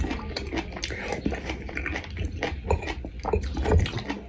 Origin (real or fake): real